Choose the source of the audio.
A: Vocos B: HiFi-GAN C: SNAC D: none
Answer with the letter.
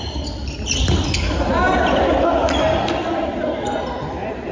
D